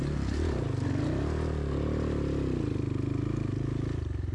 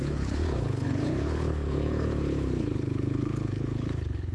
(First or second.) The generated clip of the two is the second